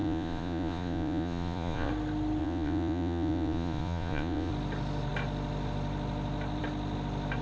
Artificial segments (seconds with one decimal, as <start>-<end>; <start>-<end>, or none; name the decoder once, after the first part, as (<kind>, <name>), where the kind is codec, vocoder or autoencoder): 0.0-1.9 (vocoder, Vocos); 2.4-4.5